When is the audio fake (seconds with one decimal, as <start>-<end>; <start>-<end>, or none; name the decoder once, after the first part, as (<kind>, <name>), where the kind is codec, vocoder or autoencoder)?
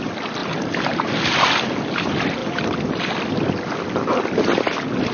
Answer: 0.4-1.1 (vocoder, BigVGAN v2)